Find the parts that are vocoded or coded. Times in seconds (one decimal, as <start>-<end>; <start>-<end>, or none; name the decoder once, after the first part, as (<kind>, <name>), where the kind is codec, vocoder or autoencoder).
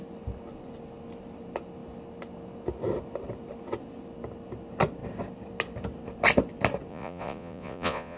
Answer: 6.9-8.2 (vocoder, Vocos)